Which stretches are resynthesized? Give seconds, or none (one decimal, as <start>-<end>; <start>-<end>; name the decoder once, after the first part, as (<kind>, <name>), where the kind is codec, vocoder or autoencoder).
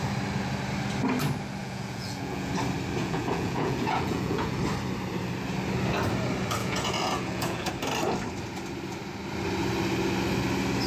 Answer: 1.6-2.5 (vocoder, Vocos); 3.0-4.6; 6.6-7.7